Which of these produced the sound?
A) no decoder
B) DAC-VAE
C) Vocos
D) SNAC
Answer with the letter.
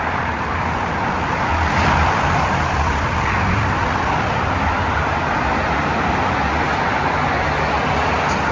A